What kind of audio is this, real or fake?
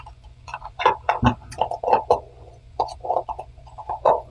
fake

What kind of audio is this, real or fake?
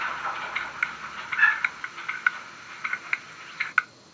real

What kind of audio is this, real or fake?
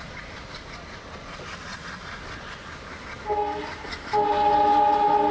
real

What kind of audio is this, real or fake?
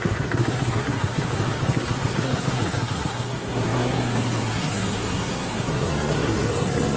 fake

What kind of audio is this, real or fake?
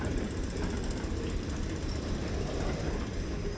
real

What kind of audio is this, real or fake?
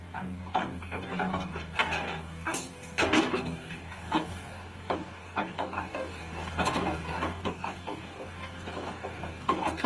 fake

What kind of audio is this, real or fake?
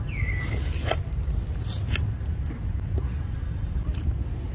real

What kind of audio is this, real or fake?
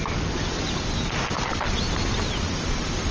real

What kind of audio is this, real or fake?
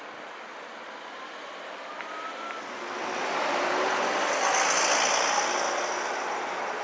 real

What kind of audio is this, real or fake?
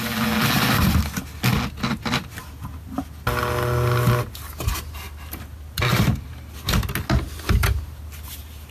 real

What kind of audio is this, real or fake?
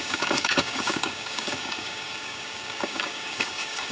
fake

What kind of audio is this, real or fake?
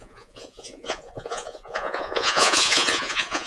fake